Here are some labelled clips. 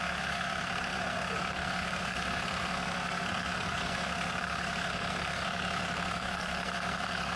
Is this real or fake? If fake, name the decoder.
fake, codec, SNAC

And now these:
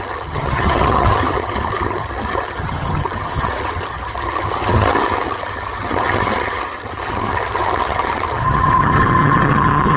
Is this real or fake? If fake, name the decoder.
fake, vocoder, HiFi-GAN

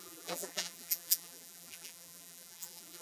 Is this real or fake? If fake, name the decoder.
fake, vocoder, BigVGAN v2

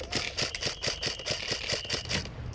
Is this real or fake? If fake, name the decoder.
real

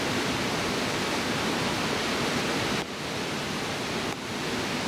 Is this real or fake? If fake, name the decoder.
real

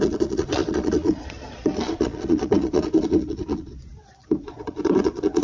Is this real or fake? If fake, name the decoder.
fake, vocoder, Vocos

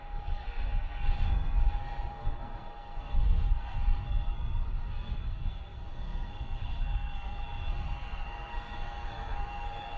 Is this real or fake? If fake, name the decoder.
fake, codec, SNAC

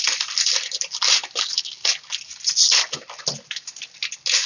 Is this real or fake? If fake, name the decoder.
real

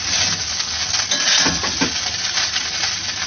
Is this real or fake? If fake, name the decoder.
real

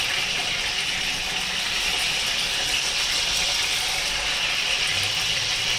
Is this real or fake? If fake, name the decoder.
real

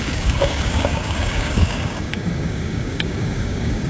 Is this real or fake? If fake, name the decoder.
fake, codec, DAC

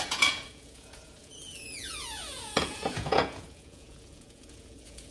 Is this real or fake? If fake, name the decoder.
fake, vocoder, Vocos